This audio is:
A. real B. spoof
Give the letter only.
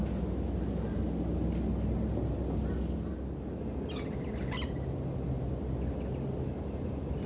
A